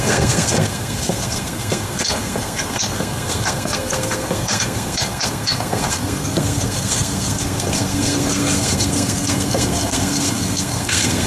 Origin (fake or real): fake